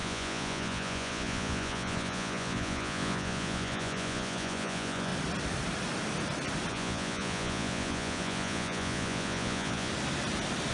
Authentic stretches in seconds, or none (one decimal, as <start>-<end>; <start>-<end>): 5.1-6.7; 9.9-10.7